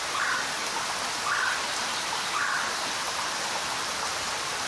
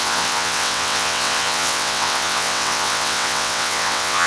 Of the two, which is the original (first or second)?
first